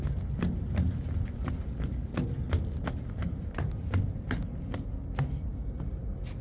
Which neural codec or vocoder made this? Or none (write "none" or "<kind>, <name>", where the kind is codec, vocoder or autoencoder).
none